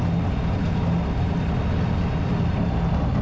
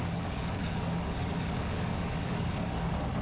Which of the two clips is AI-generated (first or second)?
second